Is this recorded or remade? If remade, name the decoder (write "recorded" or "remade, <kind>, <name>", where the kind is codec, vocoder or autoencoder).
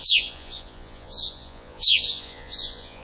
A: remade, vocoder, Vocos